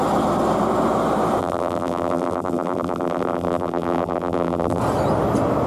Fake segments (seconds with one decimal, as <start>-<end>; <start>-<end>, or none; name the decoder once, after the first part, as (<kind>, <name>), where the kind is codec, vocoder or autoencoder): 1.4-4.8 (vocoder, BigVGAN v2)